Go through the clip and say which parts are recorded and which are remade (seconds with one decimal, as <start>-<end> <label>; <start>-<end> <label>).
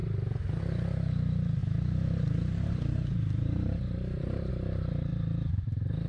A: 0.0-0.6 remade; 0.6-1.6 recorded; 1.6-4.5 remade; 4.5-5.1 recorded; 5.1-6.1 remade